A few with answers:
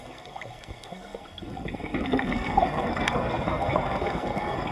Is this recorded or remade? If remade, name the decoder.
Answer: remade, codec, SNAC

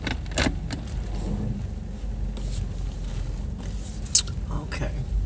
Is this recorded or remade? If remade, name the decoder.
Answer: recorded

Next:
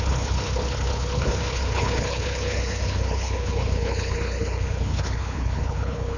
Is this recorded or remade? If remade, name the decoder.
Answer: remade, codec, HILCodec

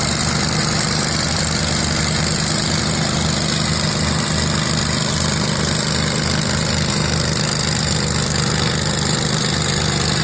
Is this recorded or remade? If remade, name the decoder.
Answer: recorded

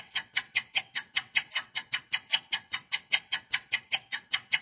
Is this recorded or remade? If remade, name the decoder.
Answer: remade, vocoder, WaveNeXt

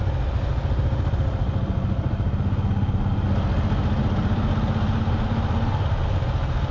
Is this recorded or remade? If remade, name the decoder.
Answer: recorded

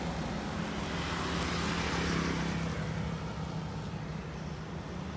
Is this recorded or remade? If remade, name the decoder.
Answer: recorded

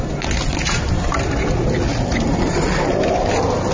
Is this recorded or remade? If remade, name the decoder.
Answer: recorded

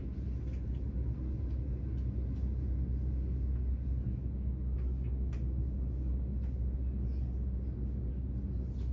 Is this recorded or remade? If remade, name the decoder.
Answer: recorded